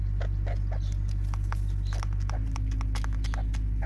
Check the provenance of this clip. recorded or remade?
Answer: recorded